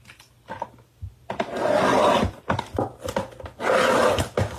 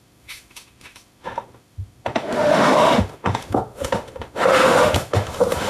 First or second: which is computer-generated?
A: second